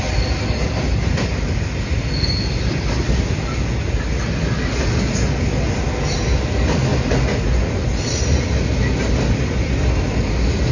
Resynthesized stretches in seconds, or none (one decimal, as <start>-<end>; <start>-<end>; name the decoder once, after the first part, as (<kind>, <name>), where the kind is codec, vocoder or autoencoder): none